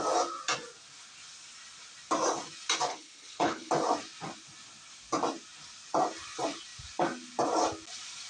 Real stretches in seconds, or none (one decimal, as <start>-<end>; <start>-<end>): 0.0-2.9; 3.7-8.3